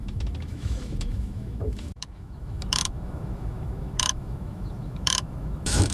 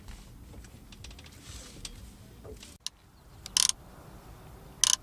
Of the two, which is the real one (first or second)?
second